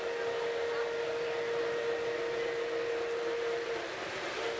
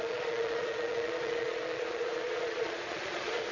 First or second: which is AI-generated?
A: second